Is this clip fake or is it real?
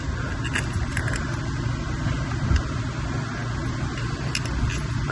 real